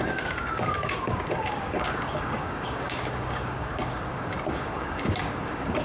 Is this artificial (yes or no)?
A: yes